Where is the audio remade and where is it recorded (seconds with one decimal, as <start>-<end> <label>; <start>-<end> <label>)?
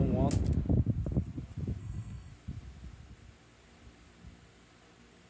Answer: 0.0-1.8 recorded; 1.8-2.3 remade; 2.3-5.3 recorded